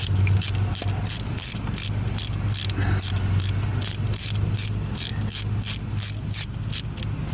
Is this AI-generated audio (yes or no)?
no